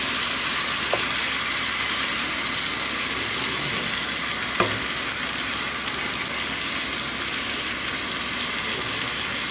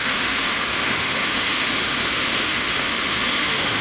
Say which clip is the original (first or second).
first